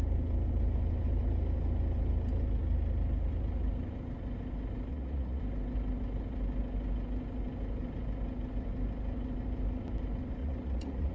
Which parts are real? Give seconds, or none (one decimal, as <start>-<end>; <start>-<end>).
0.0-4.9; 5.4-10.4